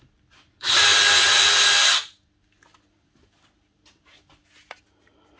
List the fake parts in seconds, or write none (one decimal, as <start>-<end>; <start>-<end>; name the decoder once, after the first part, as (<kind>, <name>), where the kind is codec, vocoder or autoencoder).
none